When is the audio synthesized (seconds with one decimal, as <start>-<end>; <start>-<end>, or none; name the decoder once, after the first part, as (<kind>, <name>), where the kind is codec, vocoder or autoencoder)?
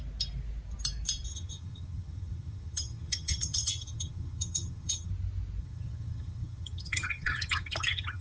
1.3-5.1 (vocoder, HiFi-GAN); 5.6-8.2